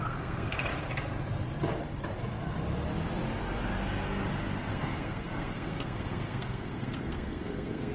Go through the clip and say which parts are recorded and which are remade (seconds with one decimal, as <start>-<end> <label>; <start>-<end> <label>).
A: 0.0-0.7 remade; 0.7-4.7 recorded; 4.7-7.9 remade